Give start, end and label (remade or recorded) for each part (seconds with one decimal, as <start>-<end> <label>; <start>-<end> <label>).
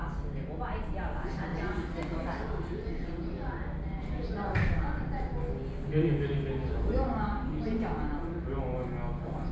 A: 0.0-9.5 recorded